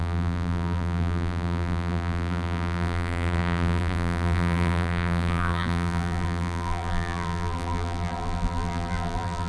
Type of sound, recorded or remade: remade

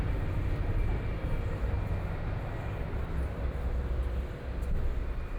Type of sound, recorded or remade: recorded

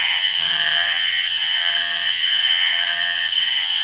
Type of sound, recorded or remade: remade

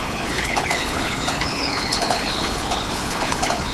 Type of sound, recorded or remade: remade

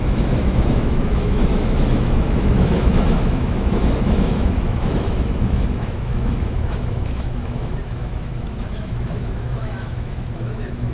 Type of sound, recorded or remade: remade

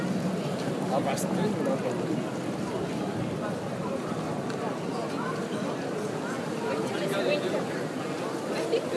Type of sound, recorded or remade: recorded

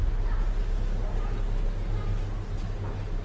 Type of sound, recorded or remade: recorded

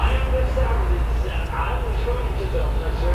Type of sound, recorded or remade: recorded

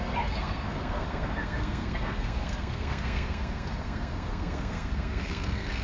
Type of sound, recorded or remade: remade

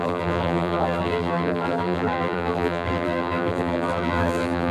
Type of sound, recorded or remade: remade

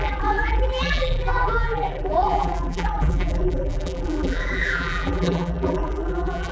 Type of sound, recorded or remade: remade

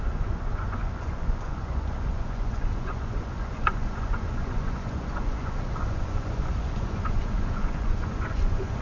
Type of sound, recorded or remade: remade